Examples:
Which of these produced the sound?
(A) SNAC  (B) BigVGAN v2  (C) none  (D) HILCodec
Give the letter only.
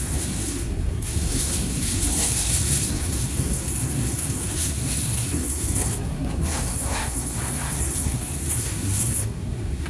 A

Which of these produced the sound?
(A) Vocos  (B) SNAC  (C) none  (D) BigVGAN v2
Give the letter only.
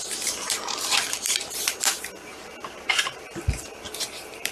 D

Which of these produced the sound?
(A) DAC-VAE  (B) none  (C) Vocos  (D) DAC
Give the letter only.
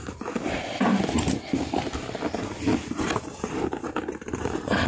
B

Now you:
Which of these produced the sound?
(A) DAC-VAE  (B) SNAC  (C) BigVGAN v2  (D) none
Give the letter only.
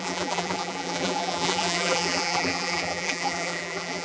C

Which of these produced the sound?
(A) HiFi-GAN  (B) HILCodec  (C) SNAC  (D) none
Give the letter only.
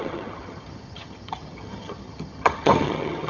A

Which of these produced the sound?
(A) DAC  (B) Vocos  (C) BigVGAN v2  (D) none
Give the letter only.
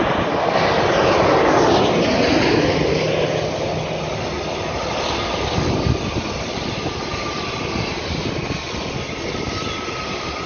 D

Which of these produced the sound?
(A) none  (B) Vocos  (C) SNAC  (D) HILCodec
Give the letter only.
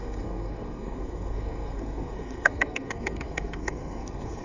C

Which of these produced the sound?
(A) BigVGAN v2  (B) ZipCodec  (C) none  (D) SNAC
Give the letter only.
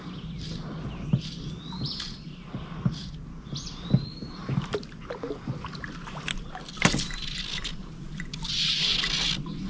C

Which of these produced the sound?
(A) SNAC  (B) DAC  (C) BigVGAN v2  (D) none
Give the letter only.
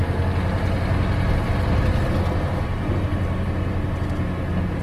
D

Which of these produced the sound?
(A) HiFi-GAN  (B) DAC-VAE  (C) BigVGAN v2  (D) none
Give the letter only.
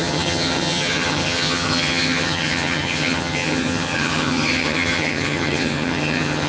A